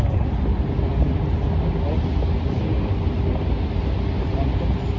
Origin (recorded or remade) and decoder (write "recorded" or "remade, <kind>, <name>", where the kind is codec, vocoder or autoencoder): recorded